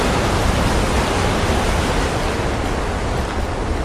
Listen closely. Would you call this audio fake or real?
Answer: real